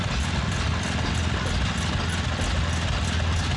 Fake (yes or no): no